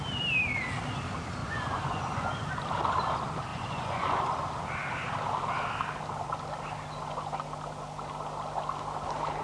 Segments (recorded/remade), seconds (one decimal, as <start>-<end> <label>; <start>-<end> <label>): 0.0-1.4 recorded; 1.4-2.5 remade; 2.5-3.5 recorded; 3.5-4.2 remade; 4.2-9.4 recorded

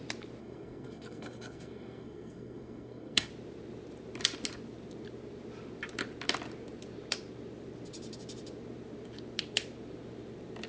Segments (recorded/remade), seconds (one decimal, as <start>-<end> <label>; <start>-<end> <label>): 0.0-0.4 recorded; 0.4-3.3 remade; 3.3-10.7 recorded